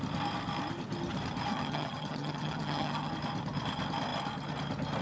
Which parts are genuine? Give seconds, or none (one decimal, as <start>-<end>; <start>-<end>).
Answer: 0.0-1.5; 3.1-5.0